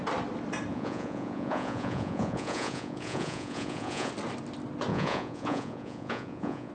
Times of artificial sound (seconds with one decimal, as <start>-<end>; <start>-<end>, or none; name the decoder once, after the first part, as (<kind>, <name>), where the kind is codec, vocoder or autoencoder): 0.7-4.1 (vocoder, Vocos); 4.9-6.7